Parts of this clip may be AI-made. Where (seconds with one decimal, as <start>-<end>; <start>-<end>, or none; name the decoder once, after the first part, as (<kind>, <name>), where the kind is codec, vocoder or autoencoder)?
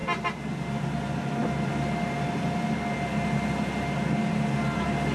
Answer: none